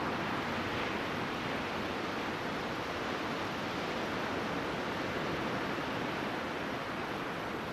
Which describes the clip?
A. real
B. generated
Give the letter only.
A